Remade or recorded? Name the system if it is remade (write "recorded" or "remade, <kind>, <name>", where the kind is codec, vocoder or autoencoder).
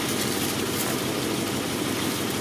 recorded